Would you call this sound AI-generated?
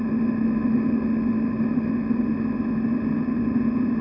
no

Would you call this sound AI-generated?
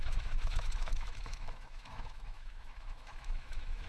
yes